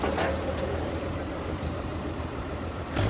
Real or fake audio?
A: fake